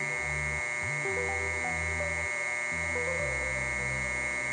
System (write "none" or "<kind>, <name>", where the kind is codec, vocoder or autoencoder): none